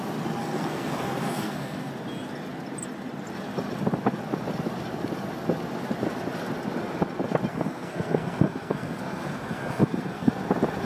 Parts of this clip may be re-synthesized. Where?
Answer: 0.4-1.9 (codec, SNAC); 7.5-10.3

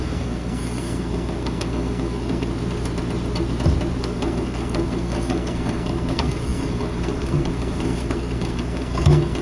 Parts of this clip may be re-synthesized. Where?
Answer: 0.0-2.5 (codec, SNAC); 4.0-9.4

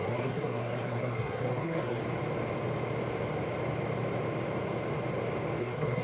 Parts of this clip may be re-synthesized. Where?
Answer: 0.0-2.0 (codec, SNAC); 5.6-6.0

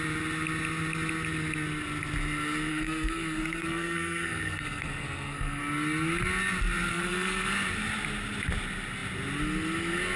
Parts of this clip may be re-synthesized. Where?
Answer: 2.7-5.6 (codec, SNAC); 6.9-7.5

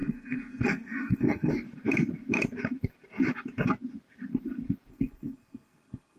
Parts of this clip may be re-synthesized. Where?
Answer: 0.0-1.5 (codec, SNAC); 4.9-6.2